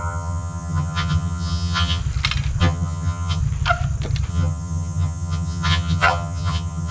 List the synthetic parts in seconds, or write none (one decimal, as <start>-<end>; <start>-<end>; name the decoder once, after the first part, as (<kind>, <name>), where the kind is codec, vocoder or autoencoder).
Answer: 0.0-2.0 (vocoder, HiFi-GAN); 2.6-3.4; 4.3-6.9